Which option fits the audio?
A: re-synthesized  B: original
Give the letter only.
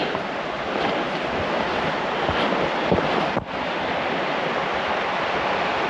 B